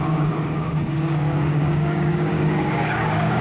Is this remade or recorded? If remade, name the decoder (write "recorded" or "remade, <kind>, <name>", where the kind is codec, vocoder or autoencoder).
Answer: remade, codec, DAC